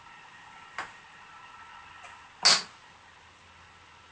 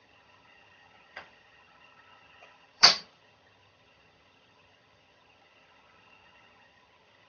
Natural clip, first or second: first